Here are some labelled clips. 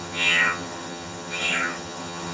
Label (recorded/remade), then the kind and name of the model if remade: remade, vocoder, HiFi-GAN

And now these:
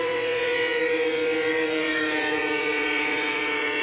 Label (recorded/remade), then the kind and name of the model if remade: remade, vocoder, WaveNeXt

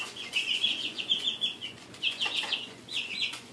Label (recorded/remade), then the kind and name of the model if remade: remade, vocoder, Vocos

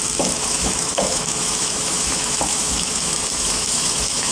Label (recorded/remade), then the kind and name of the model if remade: remade, autoencoder, DAC-VAE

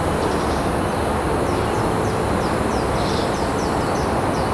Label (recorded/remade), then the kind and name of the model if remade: recorded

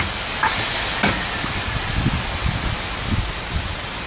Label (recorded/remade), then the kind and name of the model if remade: recorded